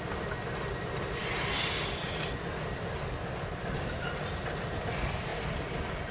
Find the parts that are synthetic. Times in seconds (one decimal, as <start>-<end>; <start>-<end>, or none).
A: none